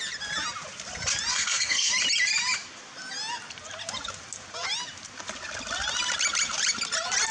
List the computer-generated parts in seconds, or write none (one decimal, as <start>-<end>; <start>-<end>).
1.3-1.9